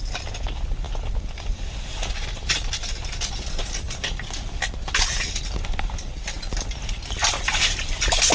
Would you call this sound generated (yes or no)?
no